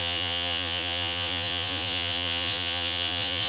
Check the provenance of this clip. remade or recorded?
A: remade